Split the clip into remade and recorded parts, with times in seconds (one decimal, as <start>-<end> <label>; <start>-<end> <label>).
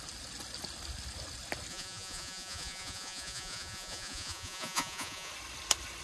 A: 0.0-1.7 recorded; 1.7-5.3 remade; 5.3-6.0 recorded